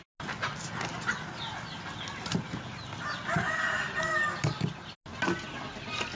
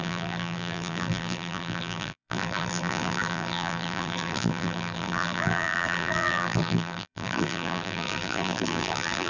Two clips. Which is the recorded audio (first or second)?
first